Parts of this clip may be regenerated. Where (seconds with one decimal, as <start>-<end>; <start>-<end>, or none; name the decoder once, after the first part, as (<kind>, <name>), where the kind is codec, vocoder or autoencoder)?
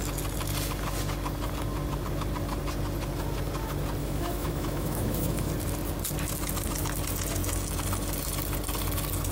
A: 4.0-5.5 (autoencoder, DAC-VAE)